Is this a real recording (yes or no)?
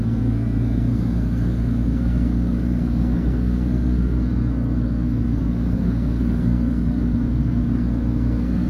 no